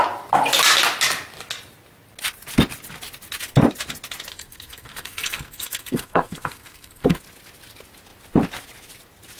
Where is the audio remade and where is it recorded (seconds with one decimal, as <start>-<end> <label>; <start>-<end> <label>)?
0.0-4.3 recorded; 4.3-7.2 remade; 7.2-9.4 recorded